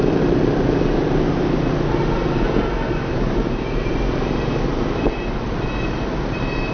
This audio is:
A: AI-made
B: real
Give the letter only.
B